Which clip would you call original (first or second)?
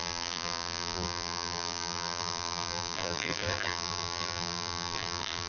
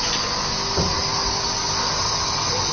second